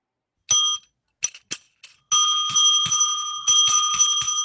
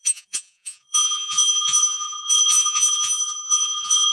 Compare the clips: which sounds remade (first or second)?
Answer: second